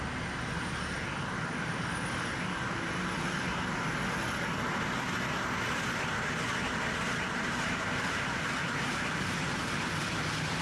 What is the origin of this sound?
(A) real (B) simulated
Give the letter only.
A